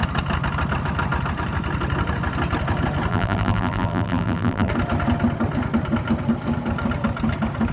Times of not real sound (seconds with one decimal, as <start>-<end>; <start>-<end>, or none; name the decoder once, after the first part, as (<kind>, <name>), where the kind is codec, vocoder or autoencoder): 3.1-4.7 (vocoder, BigVGAN v2)